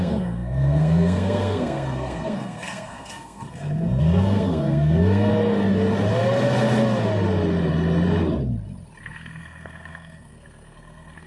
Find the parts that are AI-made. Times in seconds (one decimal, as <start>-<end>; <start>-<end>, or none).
0.0-5.3; 9.0-11.3